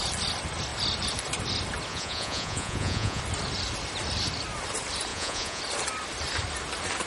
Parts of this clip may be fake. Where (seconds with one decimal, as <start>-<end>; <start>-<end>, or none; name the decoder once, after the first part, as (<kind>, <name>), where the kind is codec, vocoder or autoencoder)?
1.9-3.2 (vocoder, Vocos); 5.1-5.6